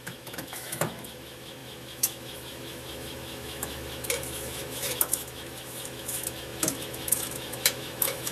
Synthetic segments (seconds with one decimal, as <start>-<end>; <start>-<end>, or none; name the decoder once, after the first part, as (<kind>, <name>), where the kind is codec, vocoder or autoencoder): 0.0-8.3 (autoencoder, DAC-VAE)